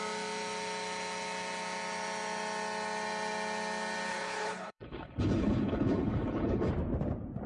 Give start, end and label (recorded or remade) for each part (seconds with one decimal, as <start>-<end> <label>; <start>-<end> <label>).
0.0-4.1 recorded; 4.1-6.7 remade; 6.7-7.5 recorded